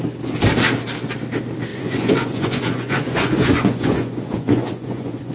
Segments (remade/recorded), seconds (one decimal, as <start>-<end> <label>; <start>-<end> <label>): 0.0-1.7 recorded; 1.7-5.3 remade

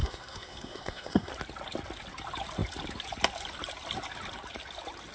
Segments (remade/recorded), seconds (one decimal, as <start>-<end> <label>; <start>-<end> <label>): 0.0-1.3 remade; 1.3-5.1 recorded

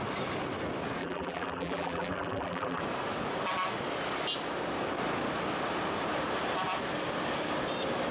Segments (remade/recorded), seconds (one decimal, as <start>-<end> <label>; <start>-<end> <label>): 0.0-1.0 recorded; 1.0-2.8 remade; 2.8-8.1 recorded

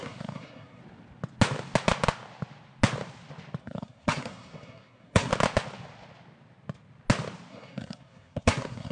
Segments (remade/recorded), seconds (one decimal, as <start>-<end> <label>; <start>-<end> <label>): 0.0-0.8 remade; 0.8-3.6 recorded; 3.6-5.3 remade; 5.3-7.5 recorded; 7.5-8.9 remade

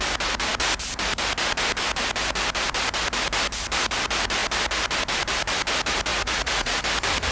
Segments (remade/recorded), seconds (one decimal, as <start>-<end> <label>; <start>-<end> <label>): 0.0-6.1 recorded; 6.1-6.8 remade; 6.8-7.3 recorded